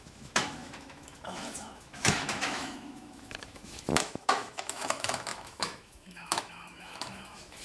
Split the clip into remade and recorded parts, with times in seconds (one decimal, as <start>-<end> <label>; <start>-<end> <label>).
0.0-7.6 remade